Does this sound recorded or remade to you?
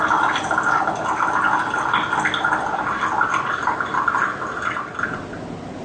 recorded